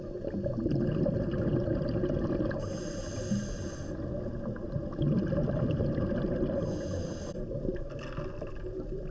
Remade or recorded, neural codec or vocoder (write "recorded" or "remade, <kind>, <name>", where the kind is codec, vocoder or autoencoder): recorded